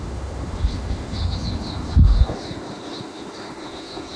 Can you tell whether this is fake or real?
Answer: fake